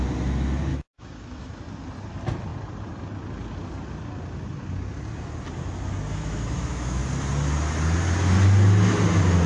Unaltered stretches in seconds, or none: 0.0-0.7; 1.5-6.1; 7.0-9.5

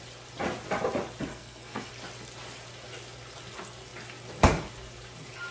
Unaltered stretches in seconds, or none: 0.0-1.3; 1.9-5.5

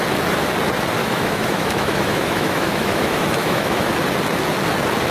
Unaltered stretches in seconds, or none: 0.0-1.0; 3.9-5.1

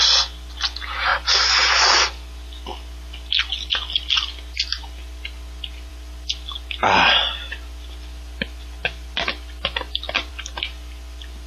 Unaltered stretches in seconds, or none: 0.0-11.5

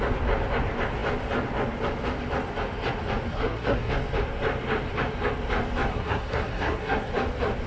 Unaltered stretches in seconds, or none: 0.0-3.3; 3.9-5.9; 7.1-7.7